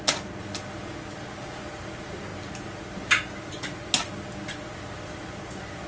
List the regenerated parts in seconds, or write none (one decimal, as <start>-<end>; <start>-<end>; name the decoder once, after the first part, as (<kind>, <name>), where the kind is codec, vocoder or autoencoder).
none